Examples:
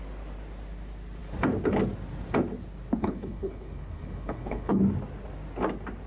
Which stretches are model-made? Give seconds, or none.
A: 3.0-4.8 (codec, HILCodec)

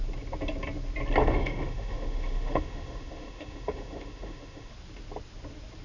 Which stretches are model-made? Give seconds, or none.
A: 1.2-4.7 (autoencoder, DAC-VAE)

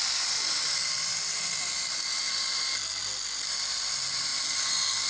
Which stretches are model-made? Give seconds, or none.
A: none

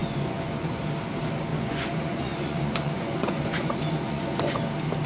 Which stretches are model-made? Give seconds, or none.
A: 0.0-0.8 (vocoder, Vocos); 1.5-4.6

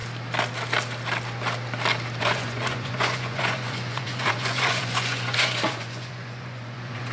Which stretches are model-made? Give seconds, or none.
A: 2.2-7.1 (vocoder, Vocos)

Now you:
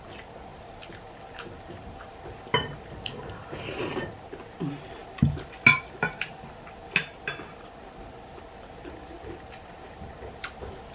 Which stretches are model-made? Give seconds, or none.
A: 0.5-4.1 (vocoder, BigVGAN v2); 5.0-10.2

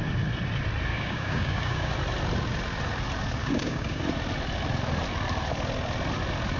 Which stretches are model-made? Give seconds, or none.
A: 0.9-1.9 (codec, DAC); 3.4-4.0

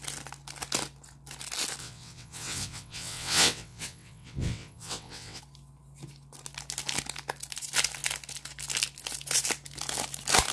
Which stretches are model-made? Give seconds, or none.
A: 1.8-5.4 (vocoder, WaveNeXt)